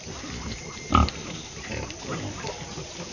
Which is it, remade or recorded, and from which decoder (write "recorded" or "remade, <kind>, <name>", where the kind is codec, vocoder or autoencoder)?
recorded